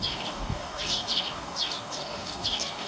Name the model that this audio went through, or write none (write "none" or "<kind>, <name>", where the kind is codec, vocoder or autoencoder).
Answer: codec, DAC